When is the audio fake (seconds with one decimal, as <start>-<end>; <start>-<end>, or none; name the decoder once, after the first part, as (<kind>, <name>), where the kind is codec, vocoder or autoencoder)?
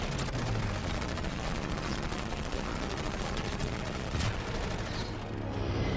0.8-4.4 (vocoder, Vocos)